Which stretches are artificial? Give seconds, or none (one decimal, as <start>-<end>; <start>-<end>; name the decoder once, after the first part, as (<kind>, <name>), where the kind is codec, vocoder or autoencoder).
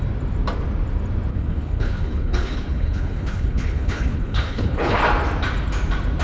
1.3-5.0 (codec, HILCodec)